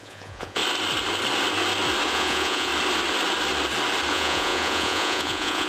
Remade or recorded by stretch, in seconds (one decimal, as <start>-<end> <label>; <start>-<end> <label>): 0.0-0.6 remade; 0.6-2.1 recorded; 2.1-2.7 remade; 2.7-4.1 recorded; 4.1-5.7 remade